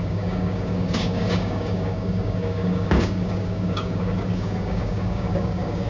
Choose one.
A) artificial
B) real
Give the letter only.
A